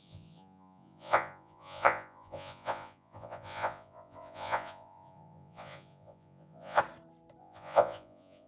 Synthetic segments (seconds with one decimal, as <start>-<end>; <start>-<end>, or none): 0.0-6.8; 7.4-8.5